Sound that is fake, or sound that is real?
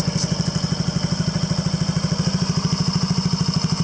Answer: real